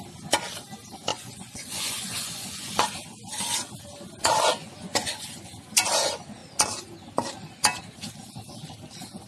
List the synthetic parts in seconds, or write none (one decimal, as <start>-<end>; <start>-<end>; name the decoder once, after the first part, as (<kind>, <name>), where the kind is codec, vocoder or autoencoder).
1.1-2.7 (vocoder, Vocos); 4.6-5.3